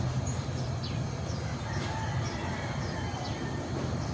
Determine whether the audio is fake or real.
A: real